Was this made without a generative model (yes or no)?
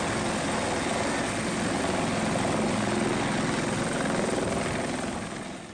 yes